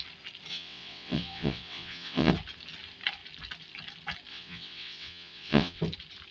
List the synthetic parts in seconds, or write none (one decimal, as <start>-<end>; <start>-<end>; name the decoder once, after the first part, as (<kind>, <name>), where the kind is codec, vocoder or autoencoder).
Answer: 0.5-2.3 (vocoder, WaveNeXt); 4.3-5.8